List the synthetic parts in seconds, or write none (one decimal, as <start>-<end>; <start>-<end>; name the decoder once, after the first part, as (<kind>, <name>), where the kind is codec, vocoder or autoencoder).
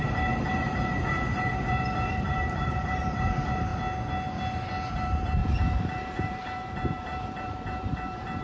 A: 0.0-3.7 (vocoder, BigVGAN v2); 4.9-8.4